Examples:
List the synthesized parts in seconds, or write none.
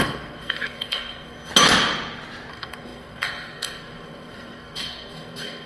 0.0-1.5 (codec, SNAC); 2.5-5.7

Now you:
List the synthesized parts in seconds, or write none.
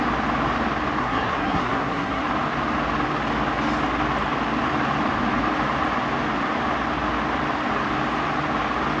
1.0-2.2 (codec, SNAC)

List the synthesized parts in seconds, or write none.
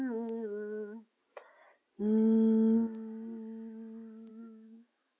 0.0-1.2 (autoencoder, DAC-VAE); 4.3-5.2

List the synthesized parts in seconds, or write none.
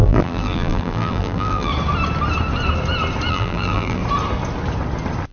0.0-1.7 (vocoder, BigVGAN v2); 3.3-4.0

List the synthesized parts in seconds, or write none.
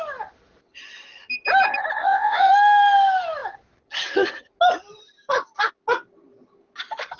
2.0-2.5 (vocoder, WaveNeXt)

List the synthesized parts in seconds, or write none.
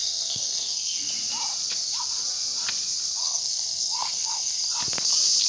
0.0-1.1 (codec, SNAC); 3.2-4.7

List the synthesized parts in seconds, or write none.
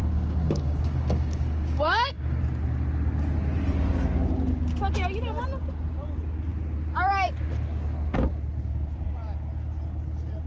0.0-2.4 (codec, DAC)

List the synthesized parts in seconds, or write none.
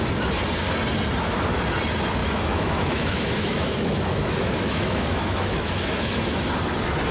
2.2-6.5 (autoencoder, DAC-VAE)